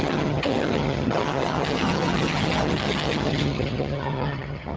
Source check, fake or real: fake